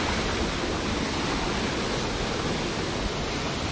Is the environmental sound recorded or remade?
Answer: recorded